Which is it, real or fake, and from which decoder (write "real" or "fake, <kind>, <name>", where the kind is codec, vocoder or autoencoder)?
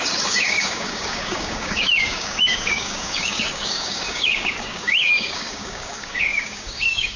fake, codec, DAC